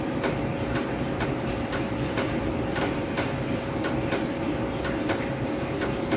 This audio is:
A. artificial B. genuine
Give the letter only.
B